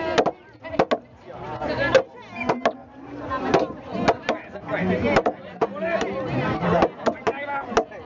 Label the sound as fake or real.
real